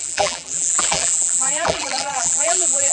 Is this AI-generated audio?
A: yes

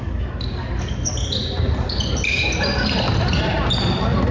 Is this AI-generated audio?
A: no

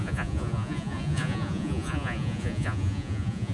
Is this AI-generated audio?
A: yes